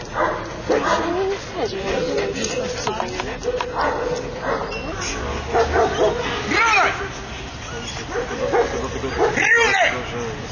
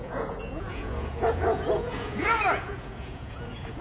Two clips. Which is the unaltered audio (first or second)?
first